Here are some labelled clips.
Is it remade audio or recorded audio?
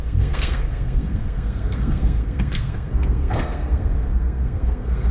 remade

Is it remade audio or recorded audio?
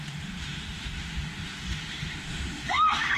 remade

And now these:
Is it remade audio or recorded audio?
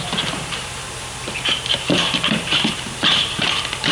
remade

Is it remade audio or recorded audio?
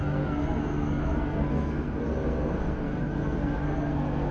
remade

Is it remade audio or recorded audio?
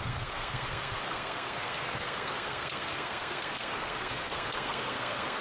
remade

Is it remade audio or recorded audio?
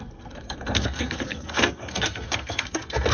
remade